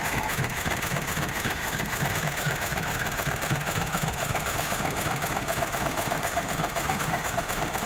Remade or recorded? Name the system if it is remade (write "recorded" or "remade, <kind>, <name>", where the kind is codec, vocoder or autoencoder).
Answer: remade, autoencoder, DAC-VAE